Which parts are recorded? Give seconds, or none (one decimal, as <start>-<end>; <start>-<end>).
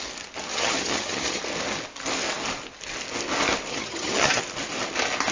0.0-0.5; 1.4-3.7; 4.4-5.3